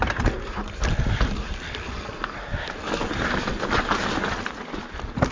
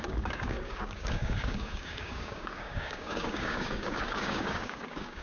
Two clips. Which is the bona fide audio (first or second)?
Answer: first